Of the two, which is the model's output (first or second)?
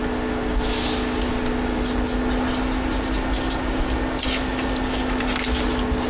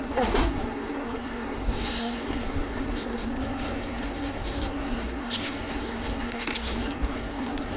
second